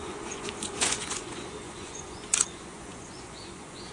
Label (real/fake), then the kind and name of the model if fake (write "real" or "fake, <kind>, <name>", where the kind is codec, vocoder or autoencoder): fake, vocoder, Vocos